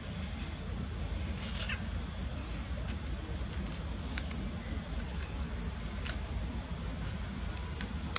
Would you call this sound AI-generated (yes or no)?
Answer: no